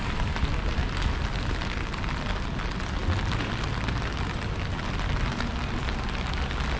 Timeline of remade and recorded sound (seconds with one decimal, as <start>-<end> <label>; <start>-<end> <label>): 0.0-6.8 recorded